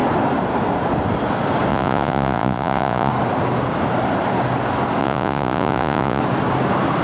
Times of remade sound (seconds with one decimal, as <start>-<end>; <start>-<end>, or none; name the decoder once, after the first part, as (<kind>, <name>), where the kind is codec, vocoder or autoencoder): 1.7-3.1 (vocoder, Vocos); 5.0-6.2

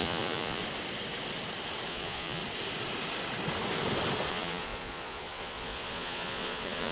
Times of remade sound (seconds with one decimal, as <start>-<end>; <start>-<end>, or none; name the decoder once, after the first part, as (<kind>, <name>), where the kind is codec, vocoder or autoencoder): 0.0-0.6 (vocoder, Vocos); 1.9-2.4; 4.3-6.9

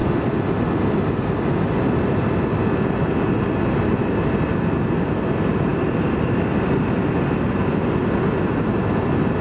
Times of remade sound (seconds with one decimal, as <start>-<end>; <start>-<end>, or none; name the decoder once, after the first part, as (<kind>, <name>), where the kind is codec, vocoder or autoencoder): none

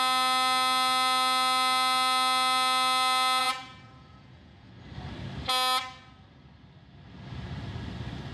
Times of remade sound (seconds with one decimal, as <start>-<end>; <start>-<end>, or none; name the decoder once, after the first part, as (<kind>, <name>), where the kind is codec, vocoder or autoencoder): 3.4-4.7 (vocoder, Vocos)

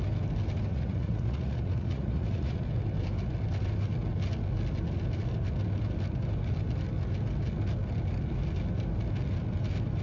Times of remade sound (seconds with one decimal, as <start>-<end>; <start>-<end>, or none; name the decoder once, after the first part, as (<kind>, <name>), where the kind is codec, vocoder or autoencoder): 0.7-2.6 (vocoder, Vocos)

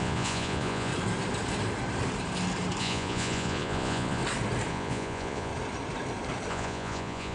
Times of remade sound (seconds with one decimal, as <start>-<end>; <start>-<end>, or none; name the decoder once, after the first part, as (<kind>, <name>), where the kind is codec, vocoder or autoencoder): 0.0-0.9 (vocoder, Vocos); 2.8-4.2; 4.7-5.5; 6.5-7.3